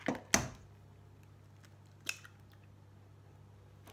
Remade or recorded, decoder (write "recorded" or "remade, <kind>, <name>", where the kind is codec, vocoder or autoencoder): recorded